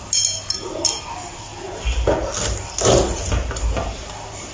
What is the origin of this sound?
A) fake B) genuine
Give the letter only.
B